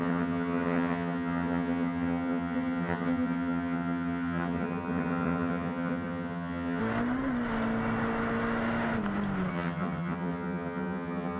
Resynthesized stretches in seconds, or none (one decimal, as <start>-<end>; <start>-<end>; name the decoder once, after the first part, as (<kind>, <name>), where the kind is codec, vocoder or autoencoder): 0.0-6.8 (vocoder, HiFi-GAN); 9.5-11.4